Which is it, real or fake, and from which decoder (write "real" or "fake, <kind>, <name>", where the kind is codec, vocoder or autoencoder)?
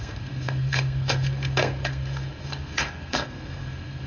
fake, codec, SNAC